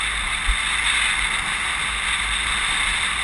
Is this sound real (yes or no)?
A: yes